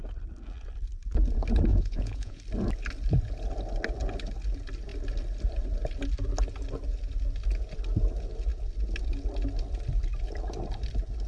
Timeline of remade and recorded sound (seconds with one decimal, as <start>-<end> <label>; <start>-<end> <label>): 0.0-1.7 recorded; 1.7-2.4 remade; 2.4-11.3 recorded